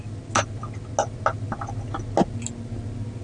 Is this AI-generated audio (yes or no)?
no